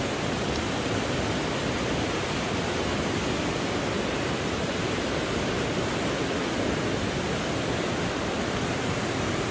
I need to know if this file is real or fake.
real